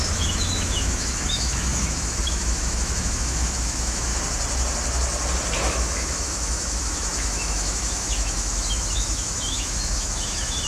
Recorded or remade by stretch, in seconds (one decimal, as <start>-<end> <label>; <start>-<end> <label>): 0.0-4.1 remade; 4.1-5.7 recorded; 5.7-10.7 remade